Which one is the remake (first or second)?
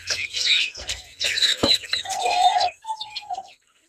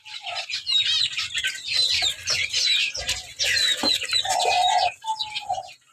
first